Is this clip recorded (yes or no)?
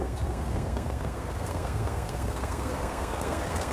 no